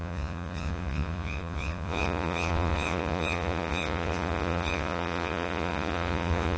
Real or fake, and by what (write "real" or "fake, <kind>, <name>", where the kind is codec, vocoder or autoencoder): fake, vocoder, Vocos